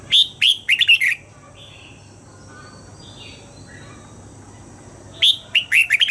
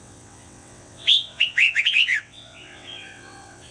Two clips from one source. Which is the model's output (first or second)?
second